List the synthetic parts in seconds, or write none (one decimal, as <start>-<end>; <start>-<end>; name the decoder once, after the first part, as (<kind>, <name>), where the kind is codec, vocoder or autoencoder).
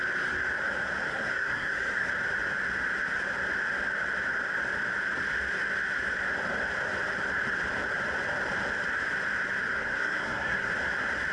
1.1-2.1 (codec, SNAC); 9.8-10.7